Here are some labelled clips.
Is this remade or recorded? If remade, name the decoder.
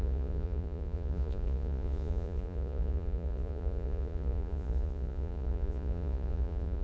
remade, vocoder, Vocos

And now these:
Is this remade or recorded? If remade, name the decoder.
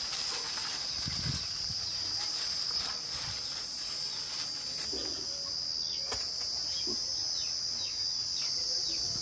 recorded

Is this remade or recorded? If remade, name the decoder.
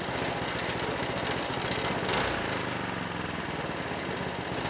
recorded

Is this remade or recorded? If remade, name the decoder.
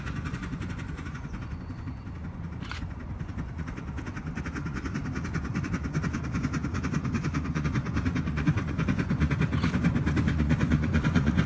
remade, vocoder, Vocos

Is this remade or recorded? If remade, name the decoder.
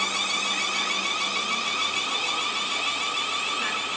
recorded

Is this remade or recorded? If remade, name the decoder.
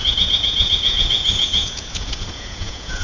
remade, vocoder, Vocos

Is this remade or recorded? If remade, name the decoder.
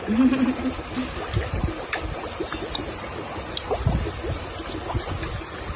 recorded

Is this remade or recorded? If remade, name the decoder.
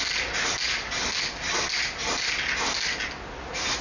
recorded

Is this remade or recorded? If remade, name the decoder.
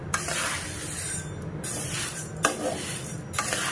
recorded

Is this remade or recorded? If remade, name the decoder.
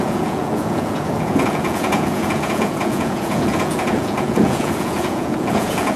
remade, vocoder, Vocos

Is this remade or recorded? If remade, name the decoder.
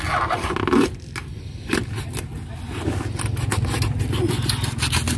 recorded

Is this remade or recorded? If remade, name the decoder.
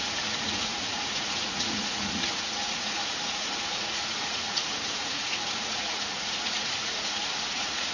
remade, vocoder, Vocos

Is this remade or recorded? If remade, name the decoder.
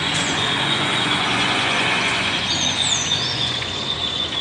remade, vocoder, Vocos